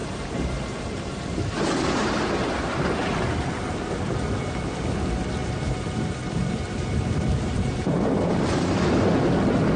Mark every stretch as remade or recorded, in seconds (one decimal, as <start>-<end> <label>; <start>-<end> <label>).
0.0-2.3 remade; 2.3-5.4 recorded; 5.4-8.8 remade; 8.8-9.8 recorded